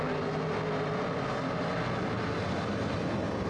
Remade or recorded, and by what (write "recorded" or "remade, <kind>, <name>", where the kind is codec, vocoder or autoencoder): recorded